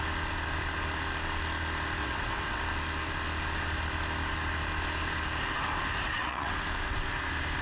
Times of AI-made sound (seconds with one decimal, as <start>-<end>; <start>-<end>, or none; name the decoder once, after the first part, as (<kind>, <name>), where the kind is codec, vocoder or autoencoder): 2.0-2.6 (vocoder, WaveNeXt); 6.0-6.5